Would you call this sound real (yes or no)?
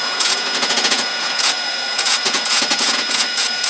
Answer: no